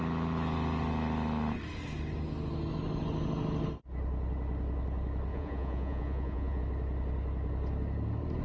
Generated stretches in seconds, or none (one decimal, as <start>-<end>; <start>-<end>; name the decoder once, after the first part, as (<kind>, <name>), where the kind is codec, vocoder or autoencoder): 5.3-6.6 (vocoder, Vocos)